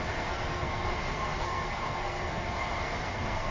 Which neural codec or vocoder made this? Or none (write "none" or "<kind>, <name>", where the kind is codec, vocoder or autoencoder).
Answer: codec, SNAC